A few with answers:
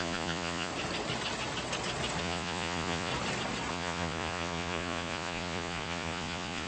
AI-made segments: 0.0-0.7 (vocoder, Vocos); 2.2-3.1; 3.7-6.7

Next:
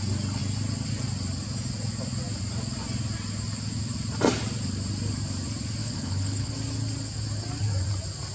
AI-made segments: 5.8-6.5 (codec, HILCodec)

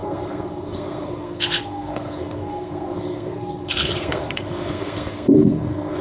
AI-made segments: 0.0-6.0 (codec, SNAC)

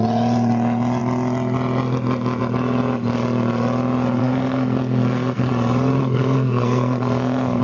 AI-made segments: 4.2-5.5 (codec, SNAC); 6.0-7.6

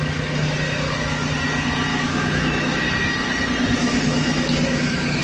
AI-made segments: 1.9-2.8 (autoencoder, DAC-VAE); 3.8-5.2

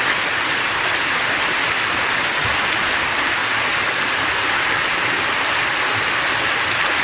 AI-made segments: none

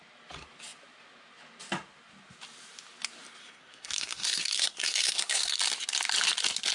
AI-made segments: 3.4-5.6 (codec, SNAC)

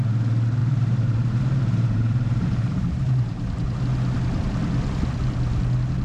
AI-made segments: 0.6-3.8 (vocoder, BigVGAN v2)